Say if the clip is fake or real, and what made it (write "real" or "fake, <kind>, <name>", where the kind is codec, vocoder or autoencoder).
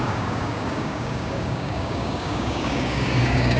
fake, codec, DAC